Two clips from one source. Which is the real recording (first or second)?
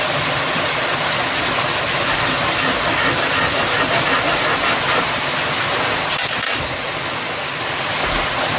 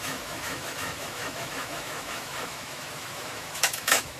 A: first